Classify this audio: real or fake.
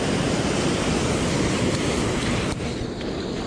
real